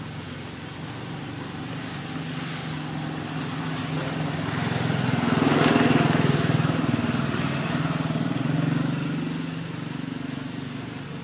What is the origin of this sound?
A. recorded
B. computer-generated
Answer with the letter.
A